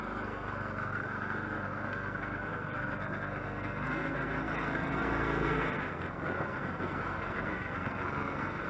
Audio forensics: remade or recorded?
remade